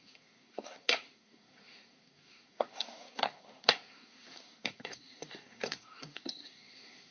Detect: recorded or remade remade